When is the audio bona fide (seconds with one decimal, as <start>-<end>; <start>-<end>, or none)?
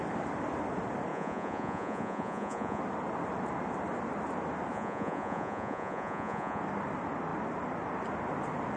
0.0-1.1; 2.8-4.7; 6.6-8.8